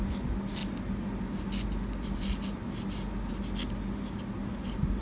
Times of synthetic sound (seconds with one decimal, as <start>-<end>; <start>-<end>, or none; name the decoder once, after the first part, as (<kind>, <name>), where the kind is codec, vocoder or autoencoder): none